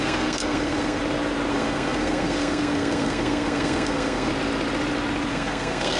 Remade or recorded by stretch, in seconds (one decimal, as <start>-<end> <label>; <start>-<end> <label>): 0.0-1.0 remade; 1.0-1.5 recorded; 1.5-4.3 remade; 4.3-5.3 recorded; 5.3-6.0 remade